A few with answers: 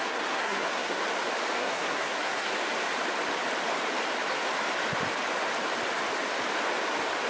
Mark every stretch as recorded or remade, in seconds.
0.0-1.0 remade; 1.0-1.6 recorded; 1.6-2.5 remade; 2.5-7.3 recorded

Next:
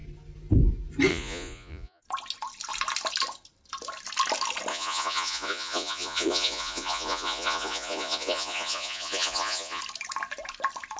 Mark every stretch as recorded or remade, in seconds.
0.0-1.1 recorded; 1.1-2.0 remade; 2.0-4.7 recorded; 4.7-9.8 remade; 9.8-11.0 recorded

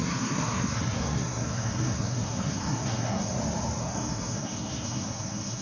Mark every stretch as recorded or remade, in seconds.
0.0-3.4 remade; 3.4-3.8 recorded; 3.8-5.6 remade

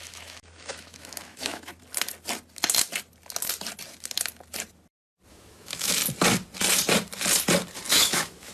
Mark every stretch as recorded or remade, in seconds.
0.0-1.7 remade; 1.7-5.3 recorded; 5.3-6.0 remade; 6.0-7.9 recorded; 7.9-8.5 remade

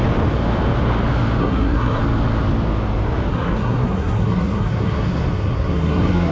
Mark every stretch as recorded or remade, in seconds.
0.0-1.4 recorded; 1.4-2.0 remade; 2.0-3.3 recorded; 3.3-6.3 remade

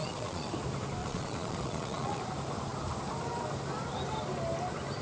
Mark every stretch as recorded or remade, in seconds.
0.0-0.5 remade; 0.5-1.0 recorded; 1.0-2.2 remade; 2.2-5.0 recorded

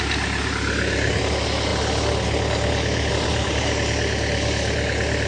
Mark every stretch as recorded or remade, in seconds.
0.0-5.3 recorded

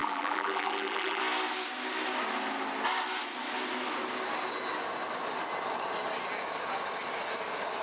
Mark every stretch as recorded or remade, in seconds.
0.0-1.2 remade; 1.2-7.8 recorded